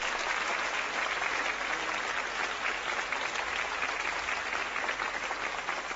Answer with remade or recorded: recorded